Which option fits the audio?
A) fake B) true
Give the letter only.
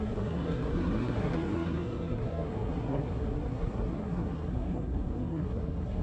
A